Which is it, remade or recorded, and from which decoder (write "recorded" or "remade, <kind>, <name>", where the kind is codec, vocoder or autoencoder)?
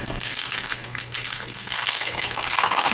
remade, codec, SNAC